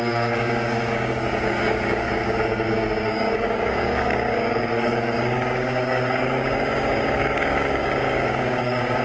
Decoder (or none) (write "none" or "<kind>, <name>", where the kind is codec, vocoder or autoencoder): codec, DAC